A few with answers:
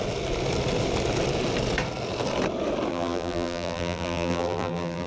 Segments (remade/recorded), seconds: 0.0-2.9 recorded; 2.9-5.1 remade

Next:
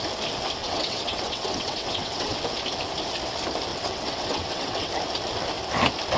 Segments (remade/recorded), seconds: 0.0-0.6 recorded; 0.6-2.4 remade; 2.4-3.7 recorded; 3.7-4.9 remade; 4.9-6.2 recorded

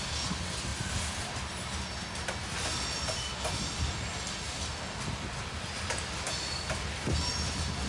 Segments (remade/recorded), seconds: 0.0-7.9 recorded